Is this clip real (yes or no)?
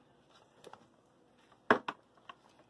yes